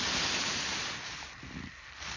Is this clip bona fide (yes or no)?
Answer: yes